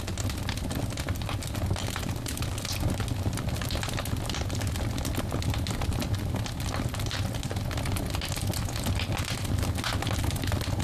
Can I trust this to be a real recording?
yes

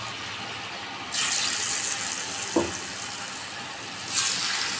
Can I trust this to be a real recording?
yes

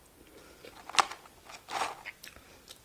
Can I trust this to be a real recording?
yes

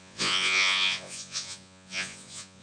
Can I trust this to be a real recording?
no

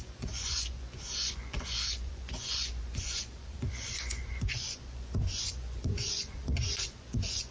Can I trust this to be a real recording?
no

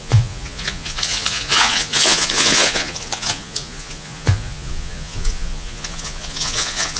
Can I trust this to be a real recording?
no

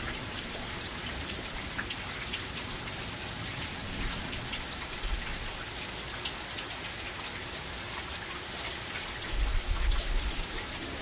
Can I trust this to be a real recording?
yes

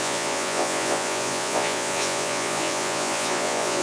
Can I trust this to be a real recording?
no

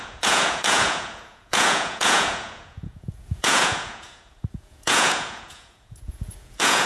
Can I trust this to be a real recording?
no